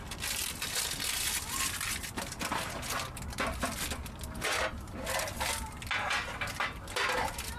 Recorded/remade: recorded